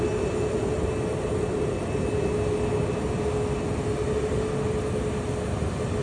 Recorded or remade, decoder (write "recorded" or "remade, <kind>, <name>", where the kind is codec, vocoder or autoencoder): recorded